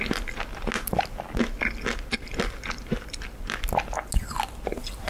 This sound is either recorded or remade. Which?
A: recorded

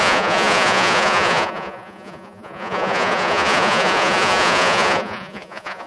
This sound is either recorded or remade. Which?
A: remade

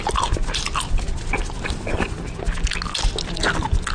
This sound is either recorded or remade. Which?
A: recorded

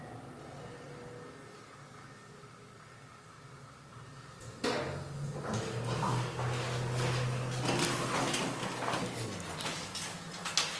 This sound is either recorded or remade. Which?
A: recorded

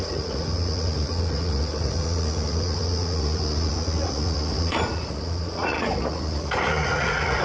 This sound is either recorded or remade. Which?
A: remade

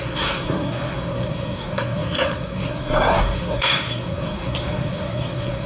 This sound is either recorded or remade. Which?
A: remade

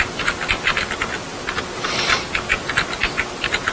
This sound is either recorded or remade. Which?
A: recorded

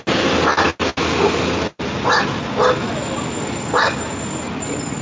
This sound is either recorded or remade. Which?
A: recorded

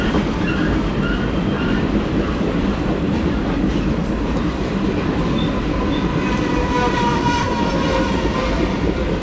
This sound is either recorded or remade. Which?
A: recorded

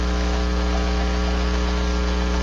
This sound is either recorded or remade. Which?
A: recorded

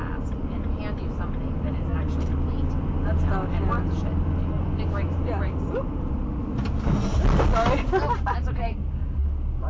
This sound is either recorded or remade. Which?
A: recorded